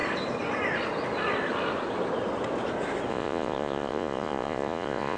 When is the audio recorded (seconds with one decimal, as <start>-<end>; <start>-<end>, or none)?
0.0-3.1